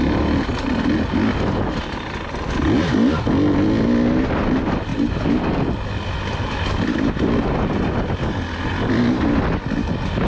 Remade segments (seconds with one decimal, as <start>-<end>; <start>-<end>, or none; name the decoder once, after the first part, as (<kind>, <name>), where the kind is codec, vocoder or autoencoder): none